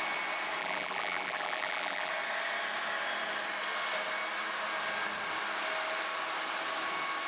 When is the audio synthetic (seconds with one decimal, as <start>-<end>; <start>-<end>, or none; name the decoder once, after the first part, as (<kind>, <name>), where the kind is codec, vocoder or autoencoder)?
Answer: 0.6-2.1 (vocoder, BigVGAN v2)